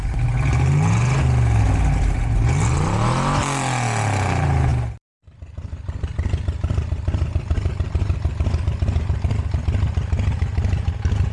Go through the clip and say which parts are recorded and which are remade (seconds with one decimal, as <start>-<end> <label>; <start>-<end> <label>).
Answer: 0.0-4.7 recorded; 4.7-9.6 remade; 9.6-11.3 recorded